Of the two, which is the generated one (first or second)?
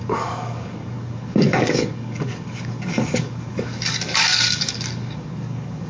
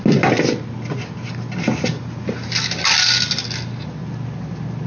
first